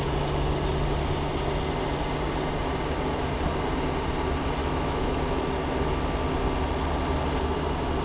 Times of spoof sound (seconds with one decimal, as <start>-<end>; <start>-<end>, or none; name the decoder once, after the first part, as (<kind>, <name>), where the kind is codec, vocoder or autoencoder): 4.6-5.2 (autoencoder, DAC-VAE)